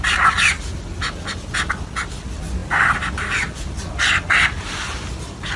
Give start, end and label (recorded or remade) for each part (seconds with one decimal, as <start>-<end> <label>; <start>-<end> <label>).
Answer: 0.0-5.6 recorded